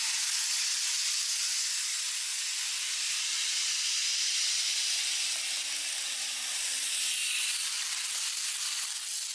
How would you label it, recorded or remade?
recorded